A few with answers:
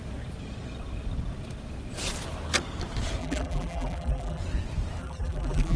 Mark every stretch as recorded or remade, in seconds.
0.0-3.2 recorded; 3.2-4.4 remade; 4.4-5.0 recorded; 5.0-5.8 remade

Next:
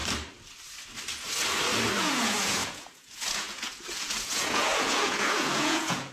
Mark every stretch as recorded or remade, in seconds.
0.0-2.0 recorded; 2.0-6.1 remade

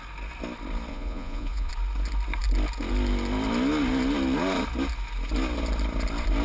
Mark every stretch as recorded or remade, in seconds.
0.0-0.9 recorded; 0.9-1.7 remade; 1.7-6.4 recorded

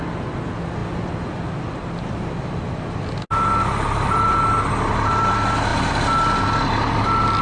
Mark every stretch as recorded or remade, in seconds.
0.0-7.4 recorded

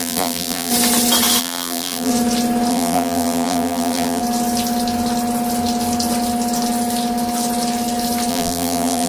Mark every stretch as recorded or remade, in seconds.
0.0-0.7 remade; 0.7-1.4 recorded; 1.4-2.1 remade; 2.1-2.7 recorded; 2.7-4.2 remade; 4.2-8.3 recorded; 8.3-9.1 remade

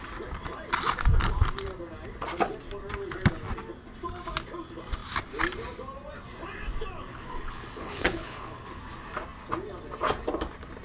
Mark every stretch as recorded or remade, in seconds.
0.0-7.1 recorded; 7.1-8.8 remade; 8.8-10.8 recorded

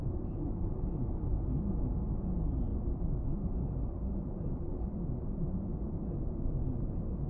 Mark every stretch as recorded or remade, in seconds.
0.0-5.7 remade; 5.7-7.3 recorded